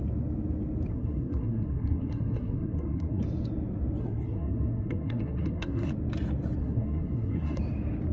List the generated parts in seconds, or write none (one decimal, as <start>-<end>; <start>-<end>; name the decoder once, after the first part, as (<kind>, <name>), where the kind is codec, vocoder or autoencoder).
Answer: 0.9-3.2 (codec, SNAC); 4.0-5.9; 6.6-7.6